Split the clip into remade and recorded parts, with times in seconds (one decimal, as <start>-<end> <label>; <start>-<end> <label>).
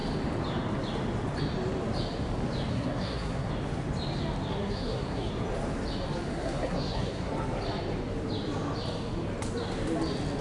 0.0-2.7 recorded; 2.7-3.5 remade; 3.5-4.5 recorded; 4.5-5.3 remade; 5.3-6.3 recorded; 6.3-7.3 remade; 7.3-10.4 recorded